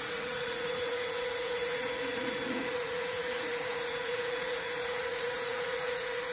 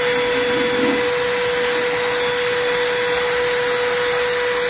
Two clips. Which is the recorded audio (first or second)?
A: second